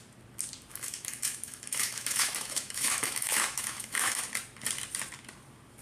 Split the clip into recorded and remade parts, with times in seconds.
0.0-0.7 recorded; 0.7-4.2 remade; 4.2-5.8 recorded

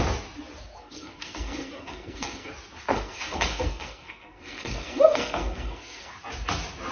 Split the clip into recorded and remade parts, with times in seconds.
0.0-0.8 recorded; 0.8-2.5 remade; 2.5-2.9 recorded; 2.9-6.1 remade; 6.1-6.9 recorded

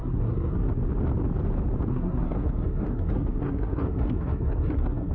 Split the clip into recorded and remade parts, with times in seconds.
0.0-0.7 remade; 0.7-1.9 recorded; 1.9-5.1 remade

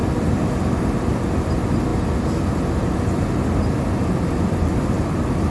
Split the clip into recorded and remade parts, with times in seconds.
0.0-5.5 recorded

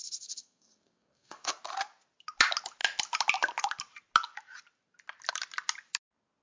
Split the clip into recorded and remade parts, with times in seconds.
0.0-1.5 remade; 1.5-6.4 recorded

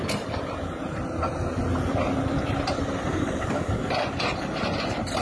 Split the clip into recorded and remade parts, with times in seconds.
0.0-3.1 recorded; 3.1-3.9 remade; 3.9-5.2 recorded

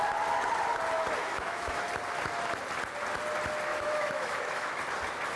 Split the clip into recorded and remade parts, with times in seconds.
0.0-1.2 recorded; 1.2-1.8 remade; 1.8-3.7 recorded; 3.7-4.8 remade; 4.8-5.4 recorded